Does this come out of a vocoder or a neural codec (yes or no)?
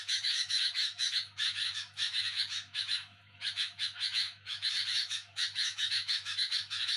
yes